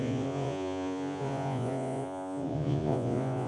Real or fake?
fake